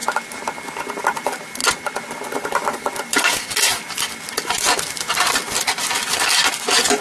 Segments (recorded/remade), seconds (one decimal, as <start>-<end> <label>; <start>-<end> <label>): 0.0-1.0 recorded; 1.0-1.6 remade; 1.6-2.1 recorded; 2.1-7.0 remade